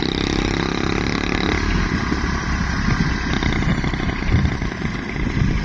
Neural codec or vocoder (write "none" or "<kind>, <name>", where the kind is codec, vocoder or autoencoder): none